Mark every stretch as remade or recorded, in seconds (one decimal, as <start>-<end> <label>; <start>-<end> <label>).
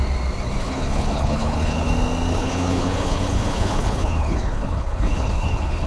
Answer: 0.0-0.6 recorded; 0.6-1.9 remade; 1.9-2.3 recorded; 2.3-5.9 remade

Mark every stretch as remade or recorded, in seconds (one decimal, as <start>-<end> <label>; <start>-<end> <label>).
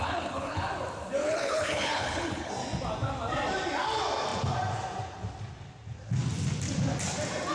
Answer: 0.0-0.6 remade; 0.6-1.2 recorded; 1.2-2.5 remade; 2.5-7.5 recorded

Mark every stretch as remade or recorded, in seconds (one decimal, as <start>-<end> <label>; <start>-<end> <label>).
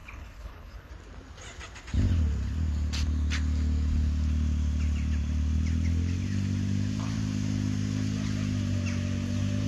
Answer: 0.0-0.9 remade; 0.9-9.7 recorded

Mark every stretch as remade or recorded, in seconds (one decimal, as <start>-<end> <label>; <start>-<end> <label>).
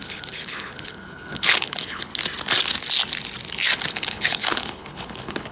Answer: 0.0-2.1 remade; 2.1-3.9 recorded; 3.9-5.5 remade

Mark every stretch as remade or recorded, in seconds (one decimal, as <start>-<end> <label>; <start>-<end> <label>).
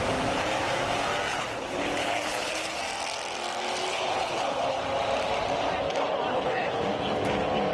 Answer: 0.0-1.3 recorded; 1.3-2.8 remade; 2.8-3.9 recorded; 3.9-4.8 remade; 4.8-6.3 recorded; 6.3-6.8 remade; 6.8-7.7 recorded